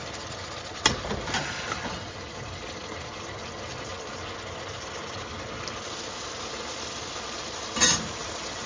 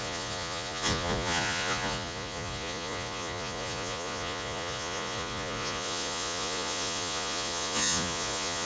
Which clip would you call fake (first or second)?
second